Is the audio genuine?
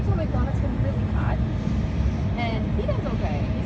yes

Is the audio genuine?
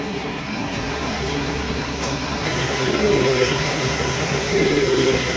no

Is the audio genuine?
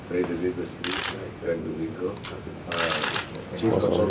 yes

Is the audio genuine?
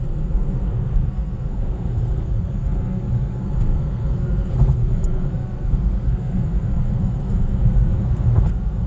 no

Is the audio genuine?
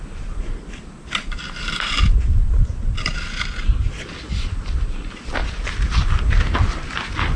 yes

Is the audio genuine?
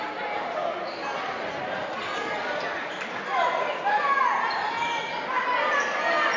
yes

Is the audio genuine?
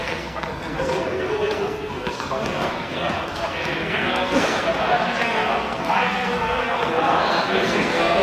no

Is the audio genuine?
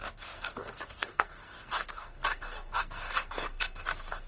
no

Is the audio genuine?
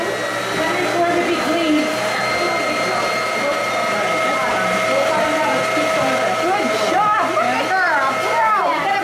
yes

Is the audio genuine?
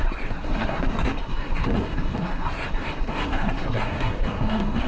no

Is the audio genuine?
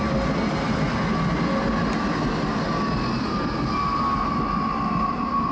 yes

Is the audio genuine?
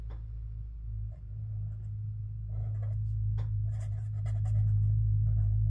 yes